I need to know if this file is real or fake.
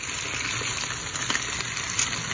real